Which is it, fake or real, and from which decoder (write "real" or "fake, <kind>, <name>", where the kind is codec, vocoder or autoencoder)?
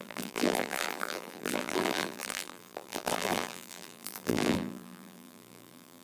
fake, vocoder, BigVGAN v2